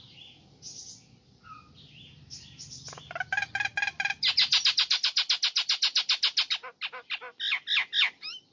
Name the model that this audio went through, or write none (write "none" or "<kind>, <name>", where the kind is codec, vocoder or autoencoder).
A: none